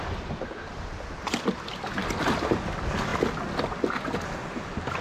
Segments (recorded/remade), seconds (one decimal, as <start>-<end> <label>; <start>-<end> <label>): 0.0-2.0 recorded; 2.0-2.5 remade; 2.5-5.0 recorded